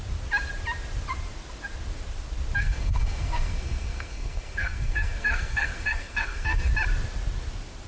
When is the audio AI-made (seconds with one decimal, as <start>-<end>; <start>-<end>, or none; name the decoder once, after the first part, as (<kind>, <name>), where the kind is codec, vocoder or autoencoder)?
2.6-6.7 (codec, SNAC)